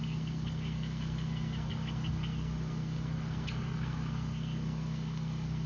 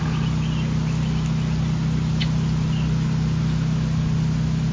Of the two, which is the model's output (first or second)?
first